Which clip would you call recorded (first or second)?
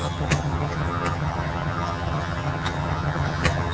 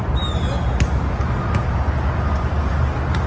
second